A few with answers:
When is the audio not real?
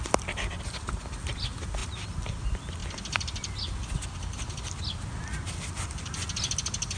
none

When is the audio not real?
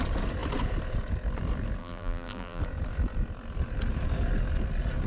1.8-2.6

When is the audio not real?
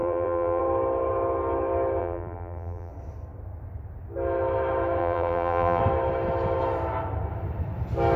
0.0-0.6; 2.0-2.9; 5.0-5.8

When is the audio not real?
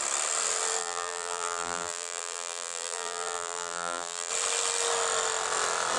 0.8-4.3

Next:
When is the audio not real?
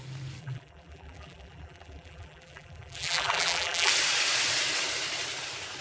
0.4-3.9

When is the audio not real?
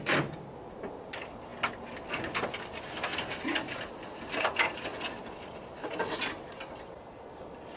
3.1-4.0